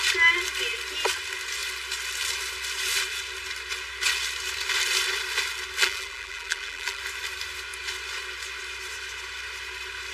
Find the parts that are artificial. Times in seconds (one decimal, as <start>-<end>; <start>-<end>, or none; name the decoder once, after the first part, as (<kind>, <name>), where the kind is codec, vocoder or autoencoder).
5.8-7.0 (vocoder, BigVGAN v2)